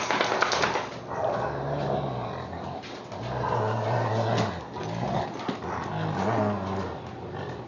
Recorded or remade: recorded